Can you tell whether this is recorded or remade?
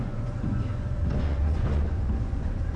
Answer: remade